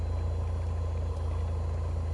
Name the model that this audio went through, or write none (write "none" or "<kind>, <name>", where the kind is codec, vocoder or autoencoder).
none